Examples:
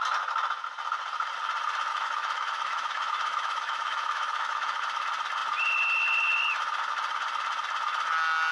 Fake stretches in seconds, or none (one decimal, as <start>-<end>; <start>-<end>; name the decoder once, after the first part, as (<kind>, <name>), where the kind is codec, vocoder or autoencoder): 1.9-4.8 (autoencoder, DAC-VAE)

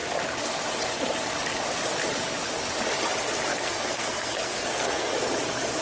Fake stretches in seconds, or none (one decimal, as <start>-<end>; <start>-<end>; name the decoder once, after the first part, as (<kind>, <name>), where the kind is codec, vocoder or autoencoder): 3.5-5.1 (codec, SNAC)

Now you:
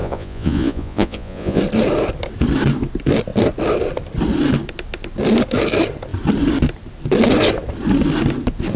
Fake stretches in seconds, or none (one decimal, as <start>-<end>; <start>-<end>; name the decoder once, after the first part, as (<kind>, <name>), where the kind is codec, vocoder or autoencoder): 0.0-1.6 (vocoder, Vocos)